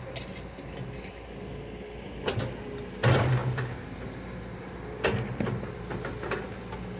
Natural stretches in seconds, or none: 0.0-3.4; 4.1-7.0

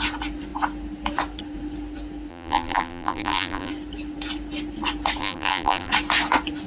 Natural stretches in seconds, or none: 0.0-2.3; 3.7-5.2; 5.9-6.7